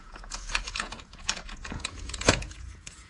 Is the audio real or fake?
fake